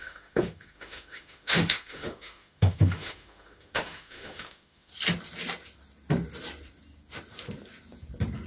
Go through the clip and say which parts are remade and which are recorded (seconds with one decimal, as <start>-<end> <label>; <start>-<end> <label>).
0.0-4.9 remade; 4.9-8.5 recorded

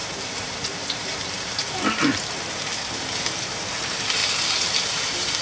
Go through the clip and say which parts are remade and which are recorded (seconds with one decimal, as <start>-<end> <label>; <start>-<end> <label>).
0.0-4.2 remade; 4.2-4.9 recorded; 4.9-5.4 remade